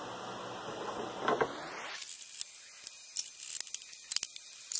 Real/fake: real